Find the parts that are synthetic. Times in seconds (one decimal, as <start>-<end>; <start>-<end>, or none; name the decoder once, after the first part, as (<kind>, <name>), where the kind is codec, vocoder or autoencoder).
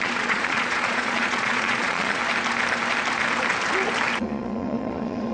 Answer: 0.0-2.2 (vocoder, Vocos); 4.2-5.3